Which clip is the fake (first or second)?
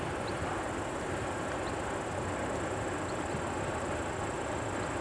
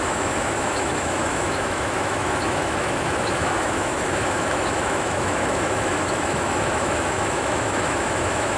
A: second